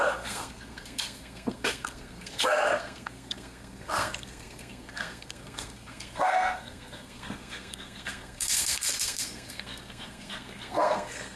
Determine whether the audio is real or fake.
fake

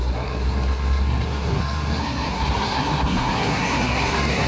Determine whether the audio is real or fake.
fake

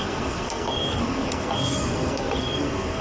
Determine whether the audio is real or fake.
fake